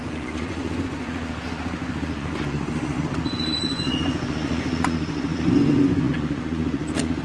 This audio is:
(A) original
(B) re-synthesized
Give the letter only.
B